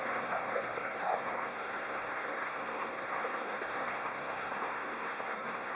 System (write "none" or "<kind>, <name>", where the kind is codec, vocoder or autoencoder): codec, SNAC